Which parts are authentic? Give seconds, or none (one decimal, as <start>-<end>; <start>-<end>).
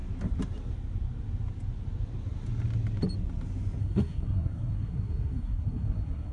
0.0-3.8